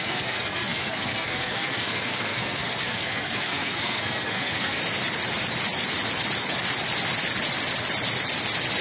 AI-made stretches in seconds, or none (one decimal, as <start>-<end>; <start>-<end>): 0.0-4.8